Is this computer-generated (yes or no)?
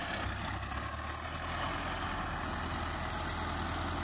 no